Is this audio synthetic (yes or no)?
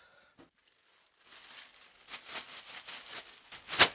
no